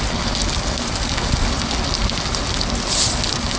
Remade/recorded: recorded